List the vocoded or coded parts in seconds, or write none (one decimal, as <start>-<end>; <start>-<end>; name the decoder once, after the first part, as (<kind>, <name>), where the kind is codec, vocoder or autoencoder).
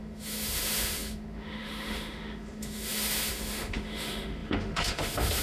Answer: 0.0-5.4 (autoencoder, DAC-VAE)